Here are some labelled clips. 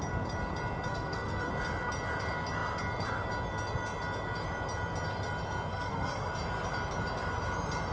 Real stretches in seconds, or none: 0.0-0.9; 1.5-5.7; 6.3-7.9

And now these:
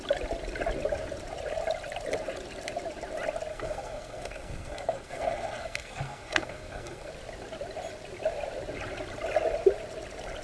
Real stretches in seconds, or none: 0.0-3.5; 7.1-10.4

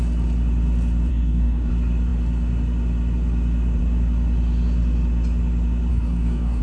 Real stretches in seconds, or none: 0.0-1.1; 1.7-5.9

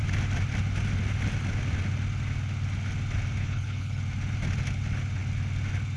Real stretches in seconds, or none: 0.0-3.4; 4.0-6.0